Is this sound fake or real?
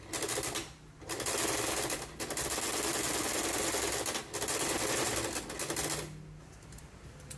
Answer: real